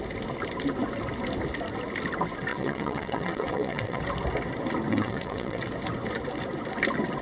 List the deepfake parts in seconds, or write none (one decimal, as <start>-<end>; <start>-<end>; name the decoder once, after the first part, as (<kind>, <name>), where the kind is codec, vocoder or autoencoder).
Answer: 2.5-4.0 (vocoder, WaveNeXt); 4.9-5.6